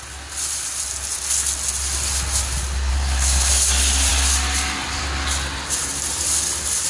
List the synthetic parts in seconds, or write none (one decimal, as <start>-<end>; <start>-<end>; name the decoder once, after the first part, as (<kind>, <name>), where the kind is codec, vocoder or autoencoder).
2.9-3.5 (codec, SNAC)